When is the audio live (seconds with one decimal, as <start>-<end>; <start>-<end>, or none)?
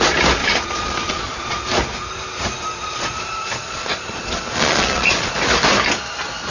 0.0-0.4; 1.6-2.9; 5.3-6.5